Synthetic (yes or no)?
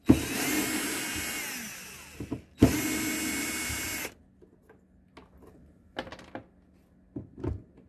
no